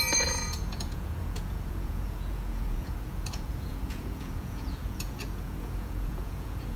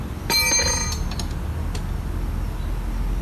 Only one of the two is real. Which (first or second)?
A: second